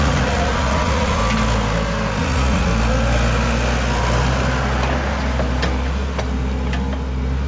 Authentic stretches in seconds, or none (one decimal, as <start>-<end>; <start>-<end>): 1.2-2.2; 2.7-7.5